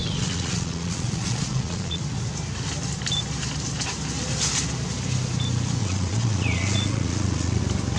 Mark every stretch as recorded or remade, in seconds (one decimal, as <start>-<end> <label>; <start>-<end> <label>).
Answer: 0.0-2.0 remade; 2.0-5.8 recorded; 5.8-7.6 remade; 7.6-8.0 recorded